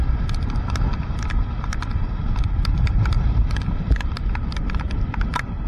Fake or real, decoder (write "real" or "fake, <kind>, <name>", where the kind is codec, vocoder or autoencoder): fake, vocoder, BigVGAN v2